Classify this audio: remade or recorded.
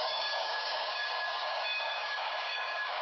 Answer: remade